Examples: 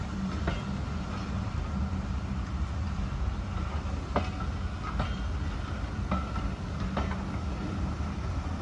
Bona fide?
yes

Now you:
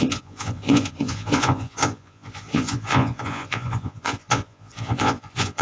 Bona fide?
no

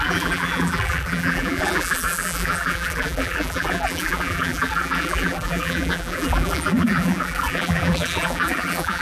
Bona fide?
no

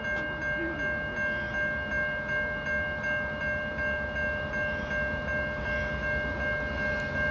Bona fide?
yes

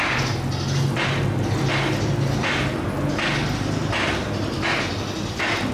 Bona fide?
yes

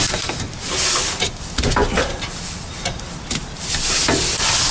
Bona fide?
yes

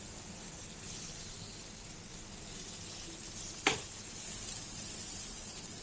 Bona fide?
yes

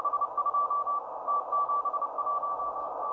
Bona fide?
yes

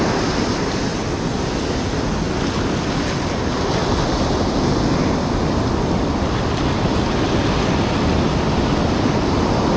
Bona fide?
yes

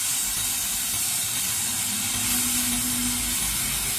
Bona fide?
yes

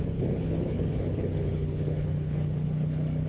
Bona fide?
no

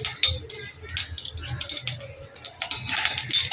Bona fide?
yes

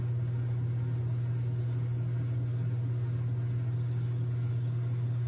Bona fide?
yes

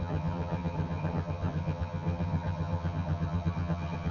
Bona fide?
no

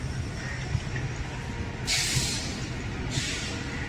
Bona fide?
yes